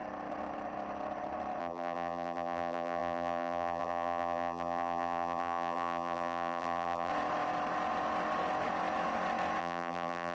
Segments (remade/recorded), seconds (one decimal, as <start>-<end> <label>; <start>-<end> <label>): 0.0-1.6 recorded; 1.6-7.1 remade; 7.1-9.6 recorded; 9.6-10.3 remade